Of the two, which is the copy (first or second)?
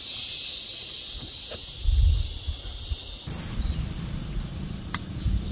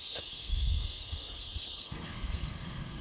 second